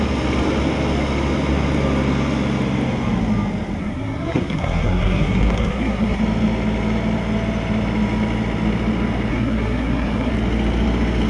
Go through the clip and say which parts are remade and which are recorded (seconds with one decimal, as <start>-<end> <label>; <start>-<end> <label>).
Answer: 0.0-3.8 recorded; 3.8-6.2 remade; 6.2-9.3 recorded; 9.3-10.3 remade; 10.3-11.3 recorded